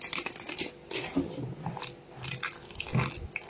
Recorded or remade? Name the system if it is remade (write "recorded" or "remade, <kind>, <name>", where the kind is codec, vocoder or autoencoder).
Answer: recorded